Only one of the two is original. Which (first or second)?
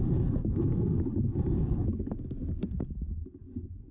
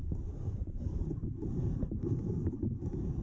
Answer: first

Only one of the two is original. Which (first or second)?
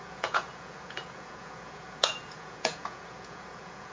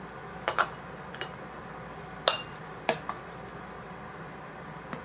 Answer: second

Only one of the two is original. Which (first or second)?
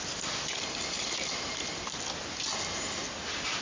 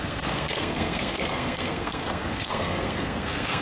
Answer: first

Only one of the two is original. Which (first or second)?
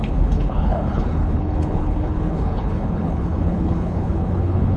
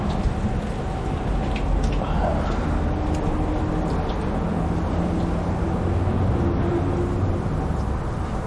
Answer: second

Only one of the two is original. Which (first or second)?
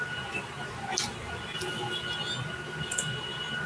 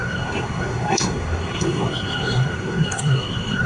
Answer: first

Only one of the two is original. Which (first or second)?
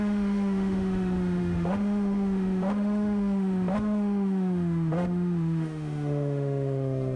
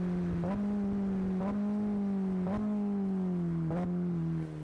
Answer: second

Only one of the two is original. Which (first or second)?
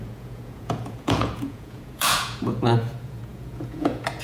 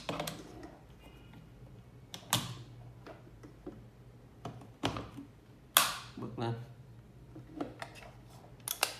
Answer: second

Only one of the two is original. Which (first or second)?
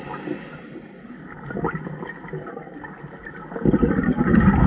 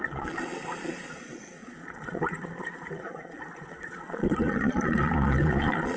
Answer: first